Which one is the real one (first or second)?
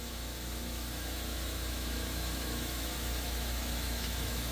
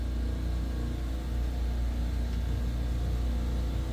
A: second